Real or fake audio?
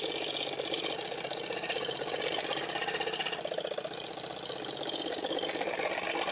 real